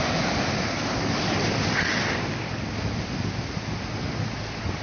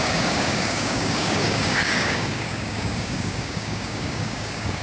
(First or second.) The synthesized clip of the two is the second